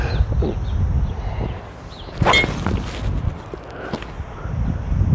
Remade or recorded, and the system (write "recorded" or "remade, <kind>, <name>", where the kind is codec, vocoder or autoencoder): recorded